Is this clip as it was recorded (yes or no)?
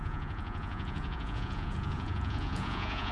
no